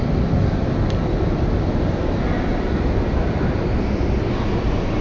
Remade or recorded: recorded